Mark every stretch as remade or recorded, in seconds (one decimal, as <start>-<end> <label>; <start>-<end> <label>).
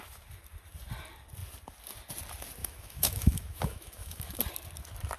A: 0.0-2.6 recorded; 2.6-4.4 remade; 4.4-5.2 recorded